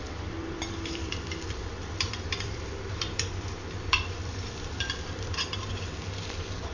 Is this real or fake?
fake